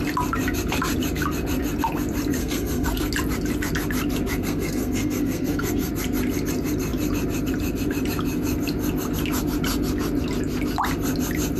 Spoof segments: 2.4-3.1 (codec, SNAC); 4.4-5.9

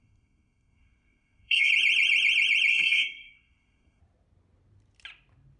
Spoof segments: 0.0-1.7 (codec, SNAC); 2.7-4.0

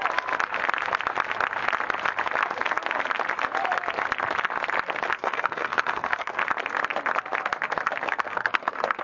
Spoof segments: 5.2-6.4 (codec, SNAC); 8.0-9.0

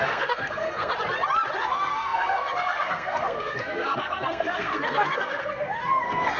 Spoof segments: 0.0-0.9 (codec, SNAC); 1.6-6.4

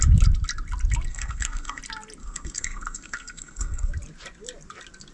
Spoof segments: 1.1-1.8 (codec, SNAC); 2.2-3.9

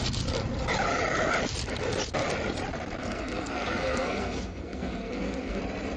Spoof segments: 3.0-5.6 (codec, SNAC)

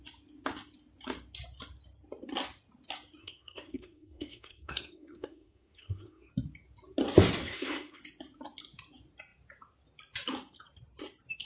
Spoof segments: 3.2-6.3 (codec, SNAC); 7.4-8.0